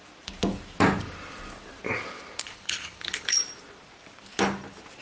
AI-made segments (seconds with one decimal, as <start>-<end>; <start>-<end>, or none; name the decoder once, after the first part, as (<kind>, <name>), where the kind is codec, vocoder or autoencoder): 2.4-3.4 (codec, HILCodec)